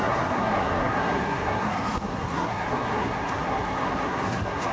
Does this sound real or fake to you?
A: fake